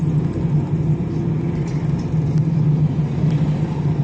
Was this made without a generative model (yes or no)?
yes